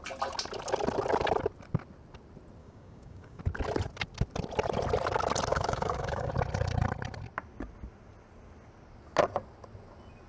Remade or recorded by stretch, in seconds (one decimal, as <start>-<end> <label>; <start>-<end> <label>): 0.0-2.6 recorded; 2.6-3.4 remade; 3.4-5.5 recorded; 5.5-6.3 remade; 6.3-10.3 recorded